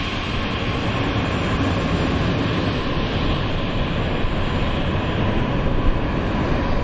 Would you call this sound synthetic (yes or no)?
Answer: no